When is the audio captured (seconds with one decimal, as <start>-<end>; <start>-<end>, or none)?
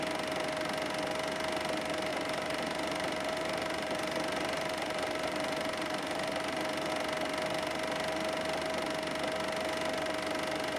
0.0-2.1; 6.9-10.8